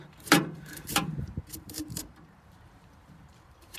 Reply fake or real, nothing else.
fake